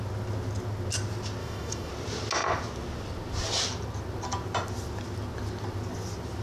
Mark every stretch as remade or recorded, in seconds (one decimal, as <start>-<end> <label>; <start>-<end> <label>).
0.0-1.4 recorded; 1.4-1.9 remade; 1.9-6.4 recorded